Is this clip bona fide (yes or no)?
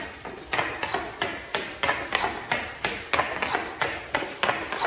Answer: yes